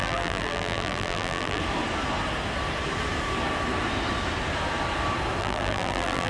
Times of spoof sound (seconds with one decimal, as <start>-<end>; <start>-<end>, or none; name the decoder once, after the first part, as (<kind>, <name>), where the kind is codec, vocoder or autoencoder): 0.0-1.6 (vocoder, BigVGAN v2); 5.4-6.3